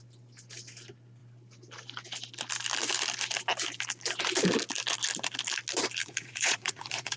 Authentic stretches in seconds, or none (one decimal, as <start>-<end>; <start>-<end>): 0.0-6.0